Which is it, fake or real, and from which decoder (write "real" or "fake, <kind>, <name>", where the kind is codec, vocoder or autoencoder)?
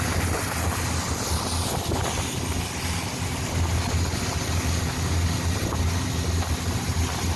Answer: real